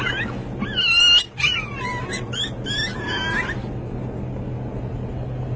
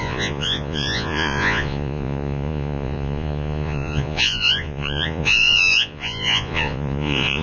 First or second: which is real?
first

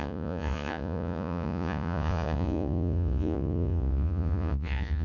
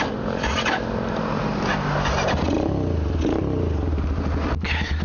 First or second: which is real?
second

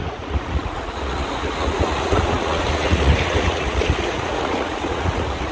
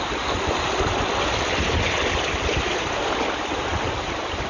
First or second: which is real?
second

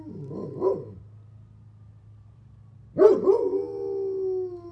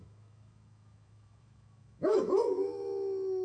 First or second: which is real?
first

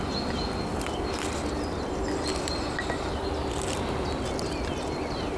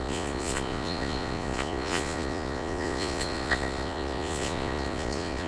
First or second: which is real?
first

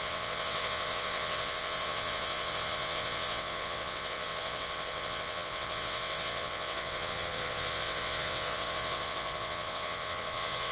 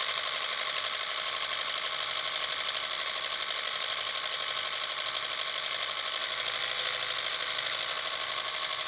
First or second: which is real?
second